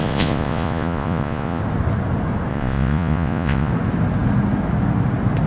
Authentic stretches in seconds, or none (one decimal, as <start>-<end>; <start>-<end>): 1.6-2.5; 3.7-5.5